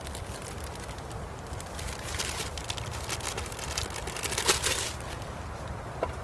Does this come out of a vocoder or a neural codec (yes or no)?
no